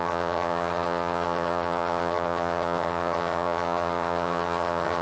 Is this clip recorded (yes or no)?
no